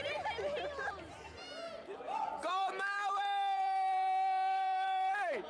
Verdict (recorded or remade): remade